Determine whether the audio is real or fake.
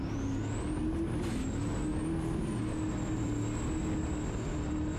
real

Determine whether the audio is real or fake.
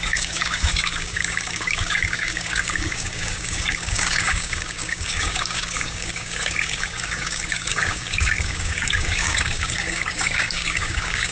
fake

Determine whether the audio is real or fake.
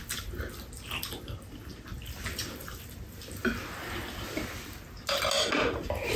real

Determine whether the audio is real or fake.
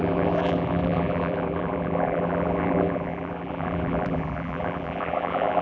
fake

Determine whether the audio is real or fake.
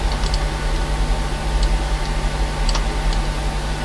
real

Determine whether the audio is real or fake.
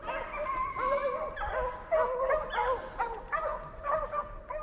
real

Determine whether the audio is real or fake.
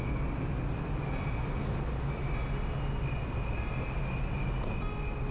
real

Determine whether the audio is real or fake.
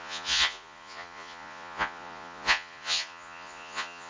fake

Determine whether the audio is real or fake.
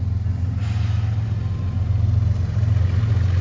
real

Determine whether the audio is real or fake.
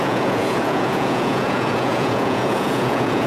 fake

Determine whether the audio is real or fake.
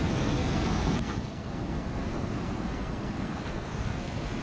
fake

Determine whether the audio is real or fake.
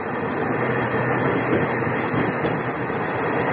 real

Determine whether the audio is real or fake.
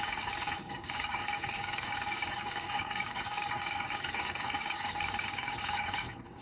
fake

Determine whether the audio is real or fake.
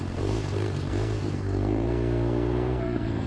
fake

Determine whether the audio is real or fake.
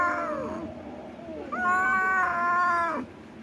real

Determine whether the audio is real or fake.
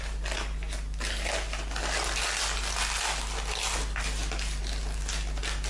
real